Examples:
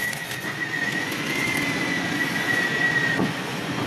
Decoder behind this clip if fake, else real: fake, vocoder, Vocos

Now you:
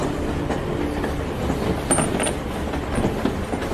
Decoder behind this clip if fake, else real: real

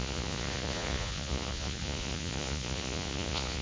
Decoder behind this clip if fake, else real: fake, vocoder, Vocos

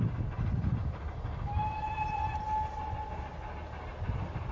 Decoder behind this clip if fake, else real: real